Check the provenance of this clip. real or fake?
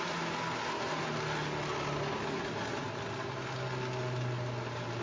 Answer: real